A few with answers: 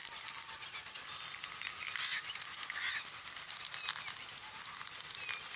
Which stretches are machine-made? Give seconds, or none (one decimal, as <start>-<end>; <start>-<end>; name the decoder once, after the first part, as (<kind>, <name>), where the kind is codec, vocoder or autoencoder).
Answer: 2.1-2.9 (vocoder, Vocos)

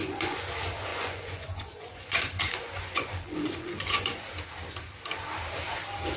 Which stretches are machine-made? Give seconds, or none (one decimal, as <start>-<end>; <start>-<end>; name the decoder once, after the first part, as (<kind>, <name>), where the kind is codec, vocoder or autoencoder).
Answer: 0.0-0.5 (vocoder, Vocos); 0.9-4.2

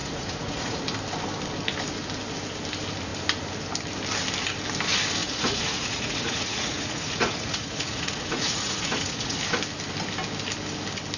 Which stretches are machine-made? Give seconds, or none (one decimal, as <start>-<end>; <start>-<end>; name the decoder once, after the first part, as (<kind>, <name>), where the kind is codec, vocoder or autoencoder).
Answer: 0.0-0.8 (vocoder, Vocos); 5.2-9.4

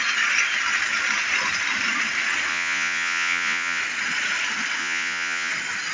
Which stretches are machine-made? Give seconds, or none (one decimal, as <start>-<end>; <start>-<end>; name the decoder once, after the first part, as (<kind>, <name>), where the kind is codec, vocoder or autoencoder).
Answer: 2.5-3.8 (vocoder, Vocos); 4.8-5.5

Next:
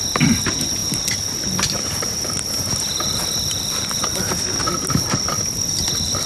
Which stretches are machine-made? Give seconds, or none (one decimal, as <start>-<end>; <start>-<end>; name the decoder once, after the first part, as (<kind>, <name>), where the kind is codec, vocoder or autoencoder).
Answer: none